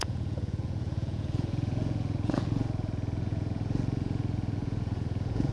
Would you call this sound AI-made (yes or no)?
yes